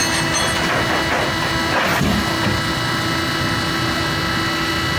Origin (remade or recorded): recorded